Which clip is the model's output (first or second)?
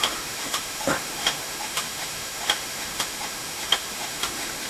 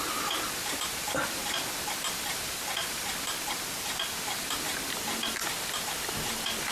first